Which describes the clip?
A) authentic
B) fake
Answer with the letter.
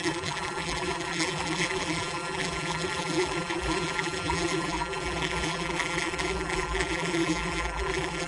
B